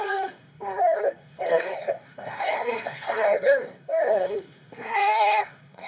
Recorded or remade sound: remade